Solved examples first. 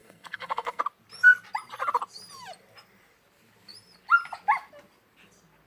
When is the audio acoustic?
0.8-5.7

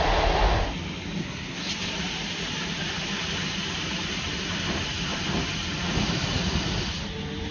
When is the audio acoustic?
0.0-1.2; 1.7-7.5